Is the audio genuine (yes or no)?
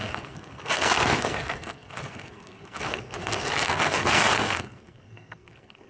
no